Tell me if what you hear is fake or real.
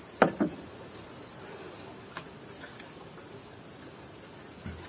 real